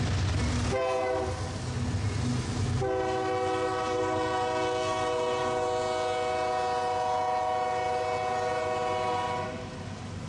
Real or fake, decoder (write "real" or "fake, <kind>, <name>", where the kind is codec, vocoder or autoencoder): real